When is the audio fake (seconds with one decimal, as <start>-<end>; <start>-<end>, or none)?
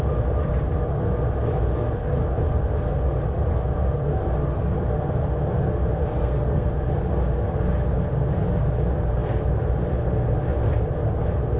6.1-6.7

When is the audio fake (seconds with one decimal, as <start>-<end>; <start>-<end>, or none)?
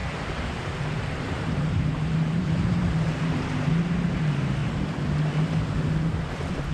0.0-3.7